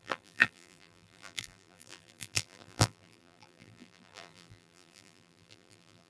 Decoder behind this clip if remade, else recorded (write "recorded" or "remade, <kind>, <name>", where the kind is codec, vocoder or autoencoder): remade, vocoder, BigVGAN v2